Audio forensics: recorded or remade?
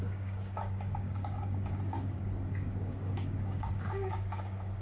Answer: remade